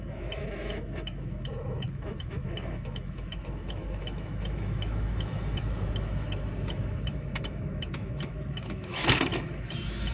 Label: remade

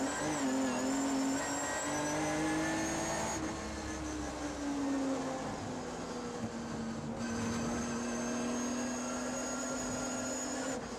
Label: recorded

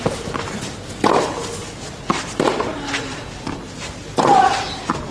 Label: recorded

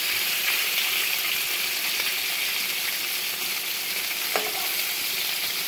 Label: recorded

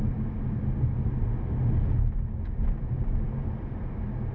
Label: recorded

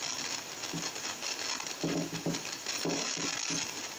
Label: recorded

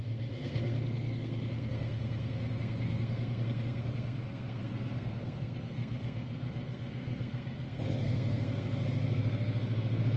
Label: remade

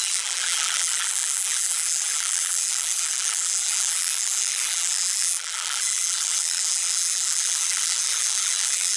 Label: remade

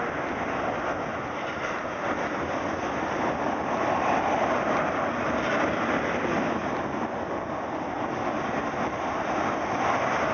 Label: recorded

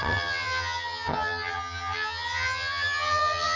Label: remade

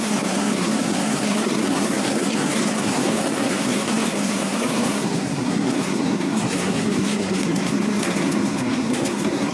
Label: remade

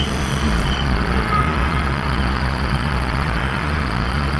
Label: remade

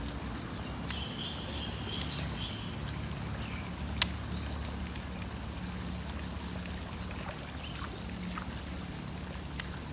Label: recorded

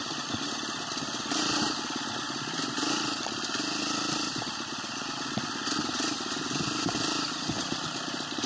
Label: remade